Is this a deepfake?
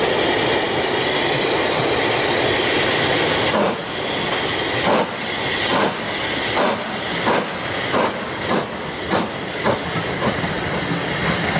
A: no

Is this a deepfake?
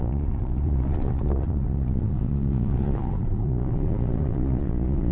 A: yes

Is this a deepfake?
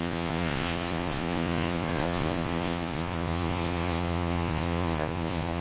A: yes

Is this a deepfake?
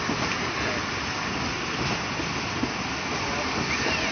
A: no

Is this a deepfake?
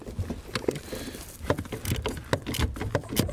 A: no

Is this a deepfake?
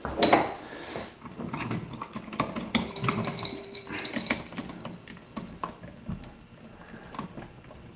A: no